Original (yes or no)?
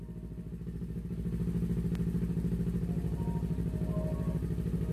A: yes